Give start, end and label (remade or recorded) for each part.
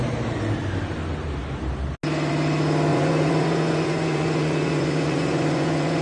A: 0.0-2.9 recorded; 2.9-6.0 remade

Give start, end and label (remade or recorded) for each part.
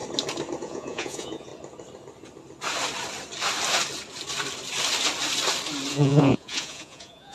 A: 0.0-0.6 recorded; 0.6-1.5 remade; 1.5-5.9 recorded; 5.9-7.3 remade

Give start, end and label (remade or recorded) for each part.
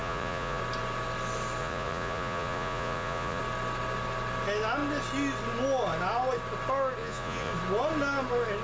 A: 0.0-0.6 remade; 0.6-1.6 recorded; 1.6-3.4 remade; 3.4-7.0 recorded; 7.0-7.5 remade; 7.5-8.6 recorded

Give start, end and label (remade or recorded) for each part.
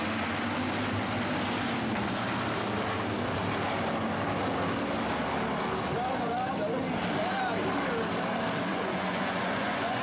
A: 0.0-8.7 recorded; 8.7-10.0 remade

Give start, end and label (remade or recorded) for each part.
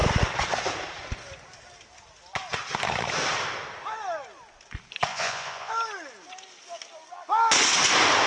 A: 0.0-5.1 recorded; 5.1-5.7 remade; 5.7-8.3 recorded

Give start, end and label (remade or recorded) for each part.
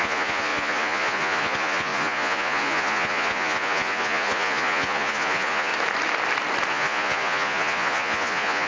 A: 0.0-5.7 remade; 5.7-6.7 recorded; 6.7-8.7 remade